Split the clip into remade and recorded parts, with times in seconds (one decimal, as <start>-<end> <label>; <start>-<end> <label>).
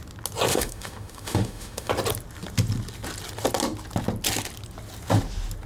0.0-0.5 recorded; 0.5-1.9 remade; 1.9-5.7 recorded